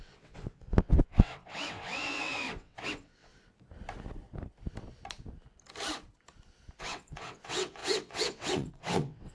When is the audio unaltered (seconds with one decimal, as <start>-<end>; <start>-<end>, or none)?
3.3-6.8